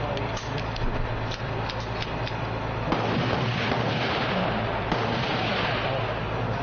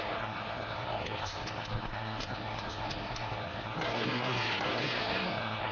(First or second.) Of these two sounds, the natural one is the first